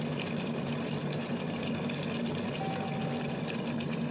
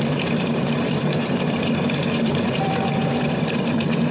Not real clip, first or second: second